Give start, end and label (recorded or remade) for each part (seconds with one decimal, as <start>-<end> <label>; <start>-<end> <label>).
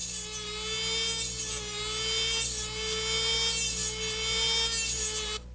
0.0-5.5 recorded